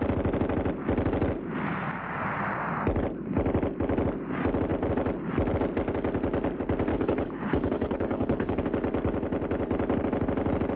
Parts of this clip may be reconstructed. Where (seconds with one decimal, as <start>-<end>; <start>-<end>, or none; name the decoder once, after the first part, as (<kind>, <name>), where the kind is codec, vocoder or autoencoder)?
6.9-8.6 (codec, HILCodec)